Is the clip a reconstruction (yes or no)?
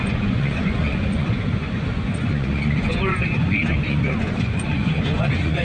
yes